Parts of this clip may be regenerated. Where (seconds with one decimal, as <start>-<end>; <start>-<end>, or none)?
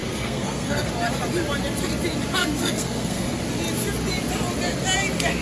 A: 0.0-0.9; 2.4-3.4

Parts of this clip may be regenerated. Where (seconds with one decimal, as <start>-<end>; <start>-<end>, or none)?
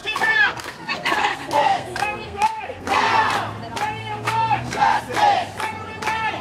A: 0.0-3.1; 4.0-5.0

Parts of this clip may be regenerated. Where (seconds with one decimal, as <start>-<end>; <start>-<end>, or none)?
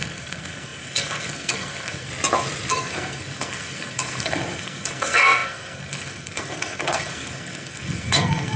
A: 0.0-2.1; 2.7-8.6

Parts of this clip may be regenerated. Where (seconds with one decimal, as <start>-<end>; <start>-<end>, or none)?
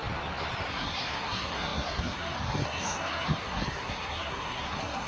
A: 0.7-5.1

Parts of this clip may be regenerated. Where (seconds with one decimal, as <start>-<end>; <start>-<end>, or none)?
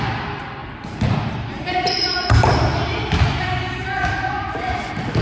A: none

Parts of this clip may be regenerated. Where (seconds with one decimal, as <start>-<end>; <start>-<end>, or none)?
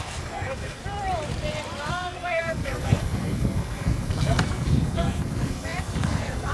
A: 0.0-0.8; 1.9-6.5